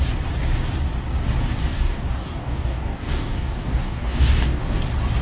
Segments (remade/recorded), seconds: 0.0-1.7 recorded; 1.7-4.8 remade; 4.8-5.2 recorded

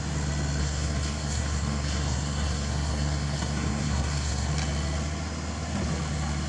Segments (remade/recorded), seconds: 0.0-0.6 recorded; 0.6-4.5 remade; 4.5-6.5 recorded

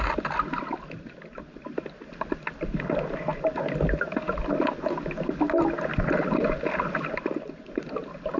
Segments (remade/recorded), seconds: 0.0-8.4 recorded

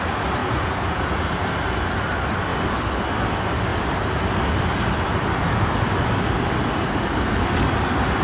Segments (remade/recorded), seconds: 0.0-0.4 recorded; 0.4-1.2 remade; 1.2-8.2 recorded

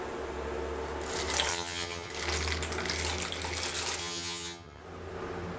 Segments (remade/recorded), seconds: 0.0-1.5 recorded; 1.5-2.1 remade; 2.1-4.0 recorded; 4.0-4.8 remade; 4.8-5.6 recorded